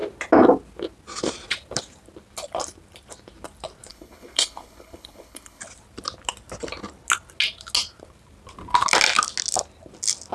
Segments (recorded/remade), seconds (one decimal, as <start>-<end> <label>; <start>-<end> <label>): 0.0-3.9 recorded; 3.9-5.6 remade; 5.6-10.3 recorded

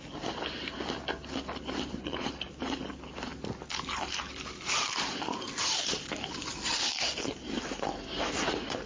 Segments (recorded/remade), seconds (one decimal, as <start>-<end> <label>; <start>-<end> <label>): 0.0-2.0 recorded; 2.0-2.5 remade; 2.5-8.9 recorded

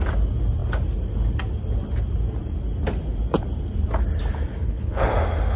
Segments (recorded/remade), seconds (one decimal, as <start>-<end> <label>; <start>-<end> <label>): 0.0-4.6 recorded; 4.6-5.1 remade; 5.1-5.6 recorded

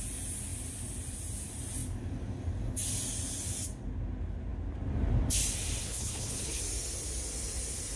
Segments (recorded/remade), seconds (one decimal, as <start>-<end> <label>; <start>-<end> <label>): 0.0-5.8 recorded; 5.8-6.6 remade; 6.6-8.0 recorded

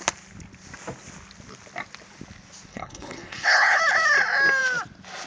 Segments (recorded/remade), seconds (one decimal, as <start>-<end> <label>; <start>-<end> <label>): 0.0-2.7 recorded; 2.7-3.8 remade; 3.8-5.3 recorded

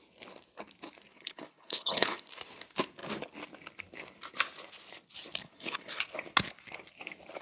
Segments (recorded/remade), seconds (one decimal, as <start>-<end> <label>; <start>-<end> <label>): 0.0-1.1 recorded; 1.1-2.3 remade; 2.3-5.4 recorded; 5.4-6.0 remade; 6.0-7.4 recorded

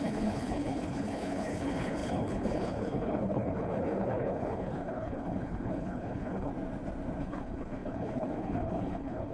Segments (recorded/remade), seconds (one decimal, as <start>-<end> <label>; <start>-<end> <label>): 0.0-6.5 remade; 6.5-7.2 recorded; 7.2-9.3 remade